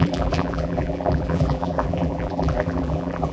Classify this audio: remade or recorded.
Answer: remade